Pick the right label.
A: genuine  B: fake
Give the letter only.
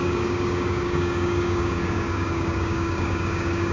B